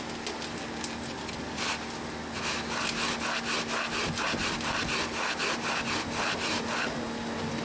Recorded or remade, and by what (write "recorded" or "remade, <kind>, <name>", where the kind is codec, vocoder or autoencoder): recorded